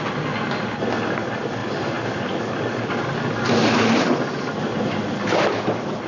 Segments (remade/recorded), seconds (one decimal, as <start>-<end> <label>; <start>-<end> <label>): 0.0-6.1 recorded